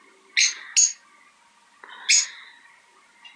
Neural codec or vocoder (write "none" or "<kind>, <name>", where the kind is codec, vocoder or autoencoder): none